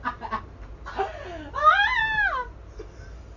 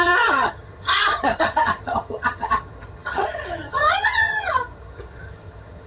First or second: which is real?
first